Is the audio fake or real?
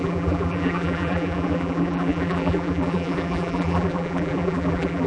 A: fake